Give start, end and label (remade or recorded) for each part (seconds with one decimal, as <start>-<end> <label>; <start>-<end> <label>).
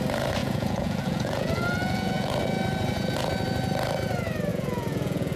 0.0-0.4 recorded; 0.4-2.3 remade; 2.3-4.5 recorded; 4.5-5.4 remade